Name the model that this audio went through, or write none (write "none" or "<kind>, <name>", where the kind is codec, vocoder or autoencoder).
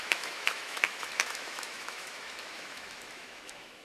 autoencoder, DAC-VAE